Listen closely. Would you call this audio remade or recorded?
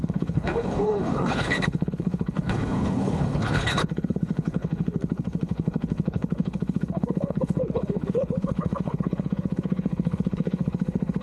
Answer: remade